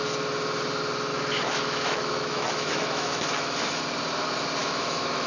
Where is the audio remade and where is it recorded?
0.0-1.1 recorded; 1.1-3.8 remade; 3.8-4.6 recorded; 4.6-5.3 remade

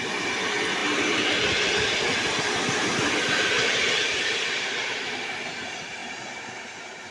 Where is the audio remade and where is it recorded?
0.0-7.1 recorded

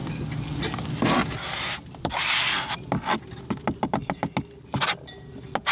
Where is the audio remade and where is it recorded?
0.0-5.7 recorded